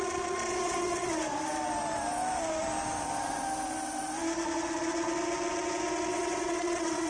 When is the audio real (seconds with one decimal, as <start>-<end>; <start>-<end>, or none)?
0.0-0.5; 1.4-6.1